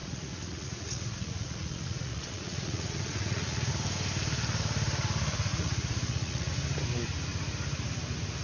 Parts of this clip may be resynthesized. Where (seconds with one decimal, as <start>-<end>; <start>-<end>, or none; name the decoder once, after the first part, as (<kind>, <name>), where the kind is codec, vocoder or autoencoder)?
0.0-3.7 (vocoder, Vocos); 5.5-6.5